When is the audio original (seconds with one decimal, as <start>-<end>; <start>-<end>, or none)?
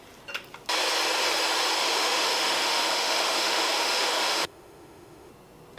0.0-1.8; 5.3-5.8